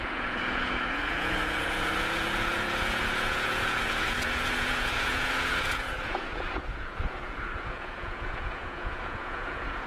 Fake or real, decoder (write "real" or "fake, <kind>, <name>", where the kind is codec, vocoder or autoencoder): fake, vocoder, Vocos